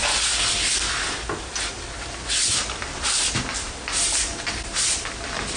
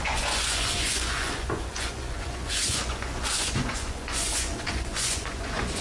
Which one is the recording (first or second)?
first